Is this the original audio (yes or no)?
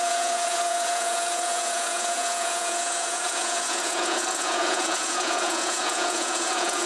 no